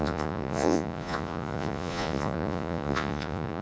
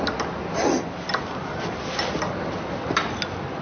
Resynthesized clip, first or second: first